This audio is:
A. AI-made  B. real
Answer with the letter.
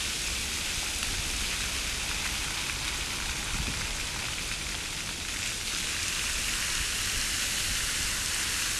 B